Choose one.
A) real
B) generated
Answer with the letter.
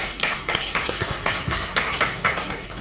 B